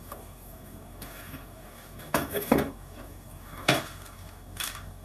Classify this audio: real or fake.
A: fake